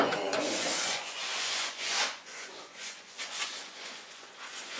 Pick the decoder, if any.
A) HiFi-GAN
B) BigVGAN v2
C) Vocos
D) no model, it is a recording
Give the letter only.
C